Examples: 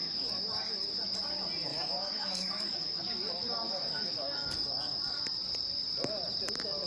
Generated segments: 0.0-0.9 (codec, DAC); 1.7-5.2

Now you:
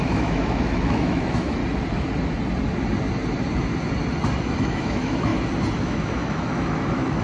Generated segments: 0.0-1.6 (autoencoder, DAC-VAE); 4.4-5.3; 5.8-7.2

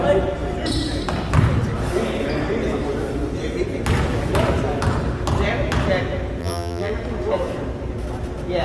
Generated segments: 6.4-6.9 (vocoder, BigVGAN v2)